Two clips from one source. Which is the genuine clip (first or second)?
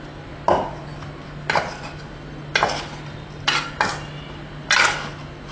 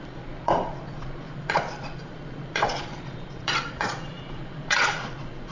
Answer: first